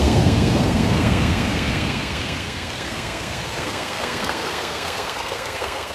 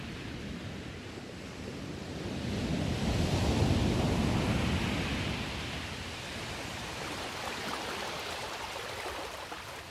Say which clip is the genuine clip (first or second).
second